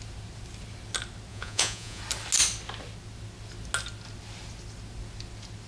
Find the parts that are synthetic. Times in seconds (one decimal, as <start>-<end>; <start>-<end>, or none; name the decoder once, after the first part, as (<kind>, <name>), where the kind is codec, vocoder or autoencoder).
1.3-2.0 (vocoder, Vocos)